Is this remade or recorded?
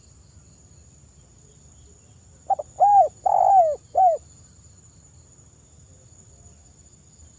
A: recorded